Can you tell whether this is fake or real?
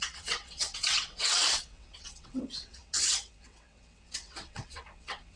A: fake